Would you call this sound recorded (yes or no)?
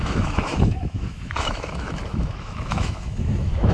no